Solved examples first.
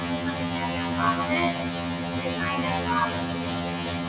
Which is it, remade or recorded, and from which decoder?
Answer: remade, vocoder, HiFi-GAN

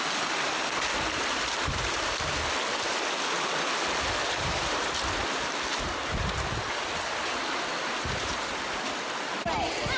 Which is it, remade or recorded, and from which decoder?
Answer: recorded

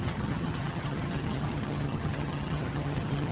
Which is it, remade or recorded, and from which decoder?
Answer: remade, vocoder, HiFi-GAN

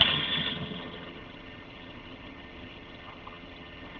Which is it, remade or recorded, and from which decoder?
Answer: remade, vocoder, HiFi-GAN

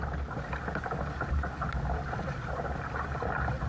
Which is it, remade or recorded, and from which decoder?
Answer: recorded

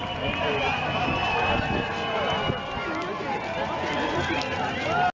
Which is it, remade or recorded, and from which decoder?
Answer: recorded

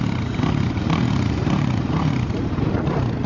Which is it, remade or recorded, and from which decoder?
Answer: recorded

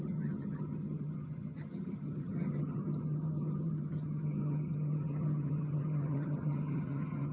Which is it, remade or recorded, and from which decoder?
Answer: remade, vocoder, HiFi-GAN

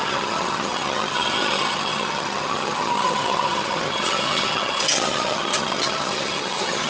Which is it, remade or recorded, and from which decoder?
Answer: remade, vocoder, HiFi-GAN